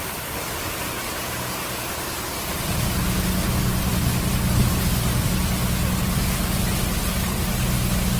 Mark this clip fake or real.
real